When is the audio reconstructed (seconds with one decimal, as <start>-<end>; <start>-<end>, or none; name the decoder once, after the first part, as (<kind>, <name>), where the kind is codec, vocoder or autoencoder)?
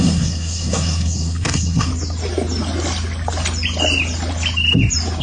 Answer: 0.0-1.9 (codec, SNAC)